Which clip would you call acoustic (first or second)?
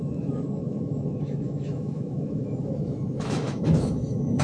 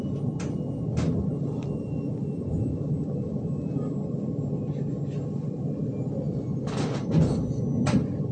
second